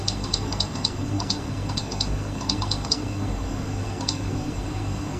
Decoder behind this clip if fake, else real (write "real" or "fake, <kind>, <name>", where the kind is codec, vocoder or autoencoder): fake, codec, SNAC